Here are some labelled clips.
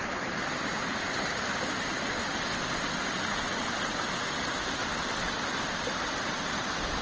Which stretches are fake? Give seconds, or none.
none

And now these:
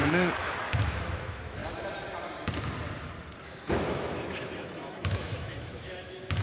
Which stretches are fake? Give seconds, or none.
0.0-1.6 (autoencoder, DAC-VAE); 3.4-6.4

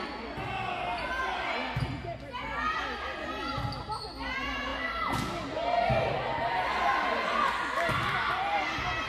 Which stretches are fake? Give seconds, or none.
none

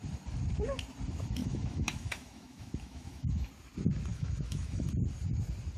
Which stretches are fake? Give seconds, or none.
1.4-3.5 (autoencoder, DAC-VAE); 4.1-4.9

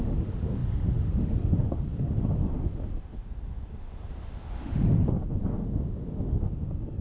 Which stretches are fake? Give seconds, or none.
0.0-7.0 (autoencoder, DAC-VAE)

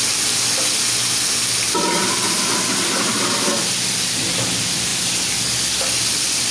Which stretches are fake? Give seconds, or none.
none

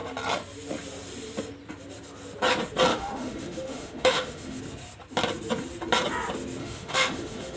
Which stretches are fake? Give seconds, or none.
2.9-4.6 (autoencoder, DAC-VAE); 6.6-7.6

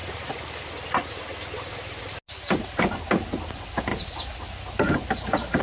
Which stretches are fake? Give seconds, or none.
none